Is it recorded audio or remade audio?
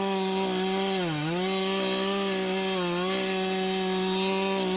recorded